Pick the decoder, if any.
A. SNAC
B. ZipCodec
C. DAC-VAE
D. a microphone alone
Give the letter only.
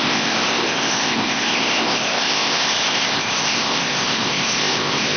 B